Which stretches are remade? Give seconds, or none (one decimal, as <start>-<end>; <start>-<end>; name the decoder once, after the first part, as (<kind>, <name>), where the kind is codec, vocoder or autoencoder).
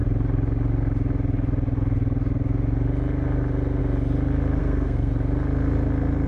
4.6-5.1 (codec, SNAC)